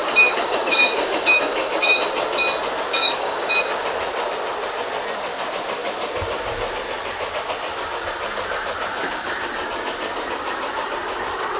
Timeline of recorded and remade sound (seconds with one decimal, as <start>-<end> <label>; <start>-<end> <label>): 0.0-2.0 remade; 2.0-3.0 recorded; 3.0-3.5 remade; 3.5-11.6 recorded